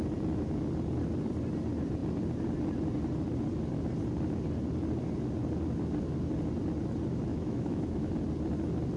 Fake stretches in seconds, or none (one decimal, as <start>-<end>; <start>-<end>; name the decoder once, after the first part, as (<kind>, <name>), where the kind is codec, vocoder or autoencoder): 7.3-8.1 (autoencoder, DAC-VAE)